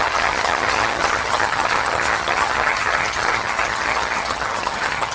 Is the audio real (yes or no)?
no